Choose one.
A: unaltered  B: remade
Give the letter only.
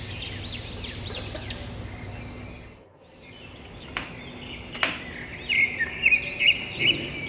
A